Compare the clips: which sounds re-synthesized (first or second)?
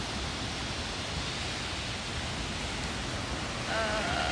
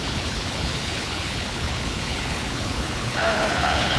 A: second